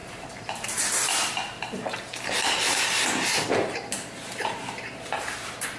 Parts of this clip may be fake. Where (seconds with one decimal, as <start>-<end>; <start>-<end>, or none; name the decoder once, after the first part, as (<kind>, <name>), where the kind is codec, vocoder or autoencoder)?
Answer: 0.0-5.8 (vocoder, BigVGAN v2)